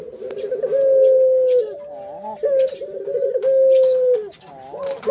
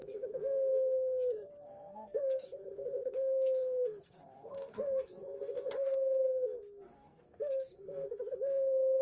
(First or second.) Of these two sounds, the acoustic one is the first